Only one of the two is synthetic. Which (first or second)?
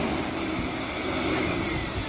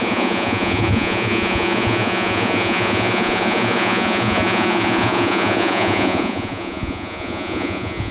second